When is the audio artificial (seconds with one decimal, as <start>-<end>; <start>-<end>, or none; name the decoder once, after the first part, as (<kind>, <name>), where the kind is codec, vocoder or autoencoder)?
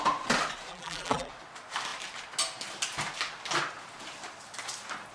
0.7-1.3 (vocoder, BigVGAN v2)